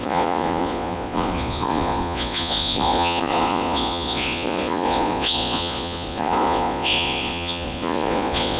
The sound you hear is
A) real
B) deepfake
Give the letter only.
B